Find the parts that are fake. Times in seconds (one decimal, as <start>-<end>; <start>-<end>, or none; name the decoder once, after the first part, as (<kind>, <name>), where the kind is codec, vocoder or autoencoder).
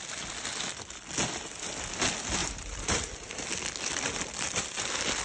2.4-2.9 (vocoder, BigVGAN v2)